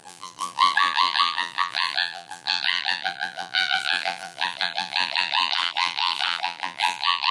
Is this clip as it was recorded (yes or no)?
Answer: no